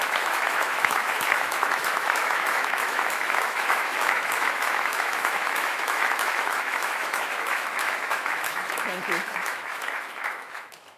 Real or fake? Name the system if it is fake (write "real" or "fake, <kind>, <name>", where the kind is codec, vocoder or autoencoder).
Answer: fake, autoencoder, DAC-VAE